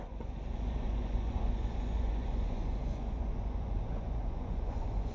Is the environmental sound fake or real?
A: fake